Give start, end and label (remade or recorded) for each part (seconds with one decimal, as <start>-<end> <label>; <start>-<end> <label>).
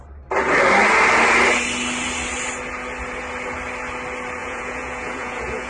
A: 0.0-4.4 recorded; 4.4-5.7 remade